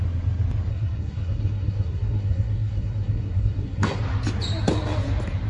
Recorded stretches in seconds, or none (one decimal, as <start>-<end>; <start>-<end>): 0.0-0.7; 4.0-5.5